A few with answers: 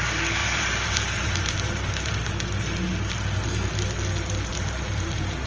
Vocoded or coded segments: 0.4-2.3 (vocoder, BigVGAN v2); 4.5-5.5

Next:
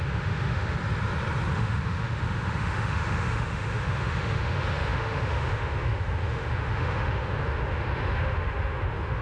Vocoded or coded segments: 0.0-0.8 (autoencoder, DAC-VAE); 1.5-9.2